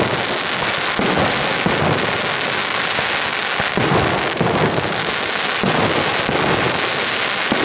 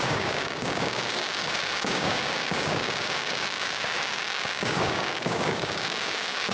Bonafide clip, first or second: first